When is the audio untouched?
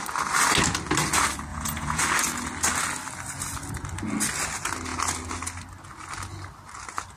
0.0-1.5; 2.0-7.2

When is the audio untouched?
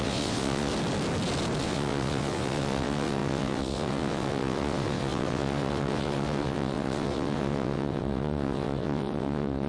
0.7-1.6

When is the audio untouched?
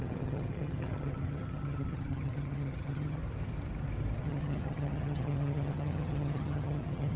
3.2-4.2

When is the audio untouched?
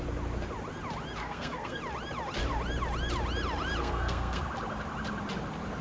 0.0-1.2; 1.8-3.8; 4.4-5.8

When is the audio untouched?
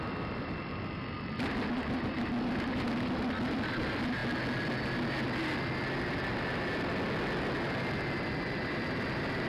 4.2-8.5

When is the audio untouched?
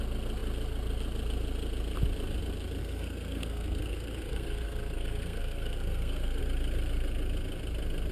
0.0-2.8; 6.4-8.1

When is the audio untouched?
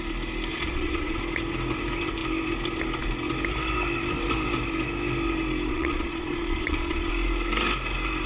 0.0-0.5; 1.2-5.7; 7.1-8.3